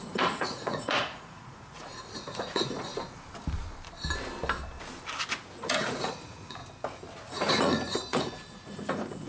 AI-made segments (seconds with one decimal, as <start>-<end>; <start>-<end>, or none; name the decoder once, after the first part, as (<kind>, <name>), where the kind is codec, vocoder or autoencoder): 0.0-2.9 (vocoder, Vocos); 5.6-6.6; 7.3-9.3